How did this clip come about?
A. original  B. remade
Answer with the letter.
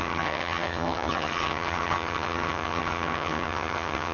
B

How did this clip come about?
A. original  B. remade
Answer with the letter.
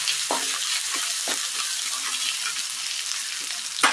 A